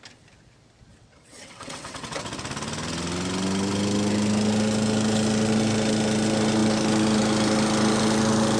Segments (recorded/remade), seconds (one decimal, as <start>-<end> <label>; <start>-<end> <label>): 0.0-0.9 recorded; 0.9-2.2 remade; 2.2-8.6 recorded